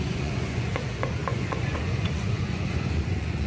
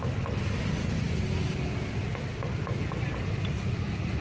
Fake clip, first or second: first